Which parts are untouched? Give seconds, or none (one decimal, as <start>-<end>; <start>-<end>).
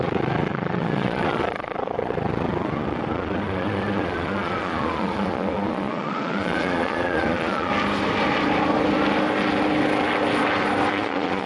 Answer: 7.7-10.9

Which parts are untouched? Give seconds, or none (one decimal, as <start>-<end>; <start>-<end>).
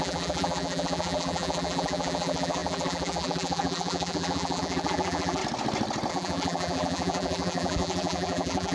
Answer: 5.4-6.1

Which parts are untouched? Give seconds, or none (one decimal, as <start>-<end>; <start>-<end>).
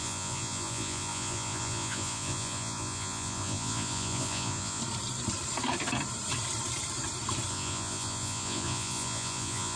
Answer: 4.8-7.5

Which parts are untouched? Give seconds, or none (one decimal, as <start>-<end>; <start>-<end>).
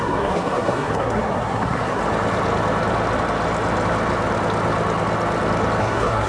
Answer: 2.0-5.8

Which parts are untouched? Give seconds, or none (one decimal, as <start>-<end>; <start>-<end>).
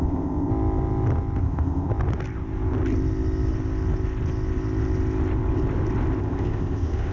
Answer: 0.5-1.4; 1.9-6.2